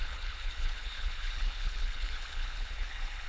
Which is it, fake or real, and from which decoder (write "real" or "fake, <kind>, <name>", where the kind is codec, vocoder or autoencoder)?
fake, codec, HILCodec